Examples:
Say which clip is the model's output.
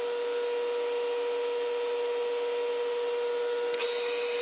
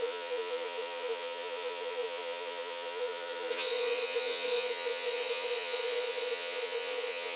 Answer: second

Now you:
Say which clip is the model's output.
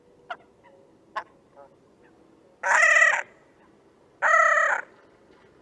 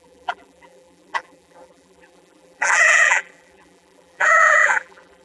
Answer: second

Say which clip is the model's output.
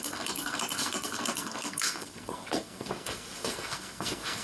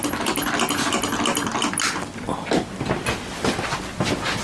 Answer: first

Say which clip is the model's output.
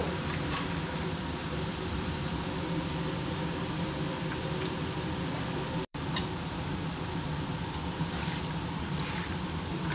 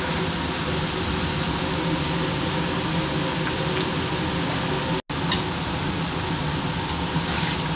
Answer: first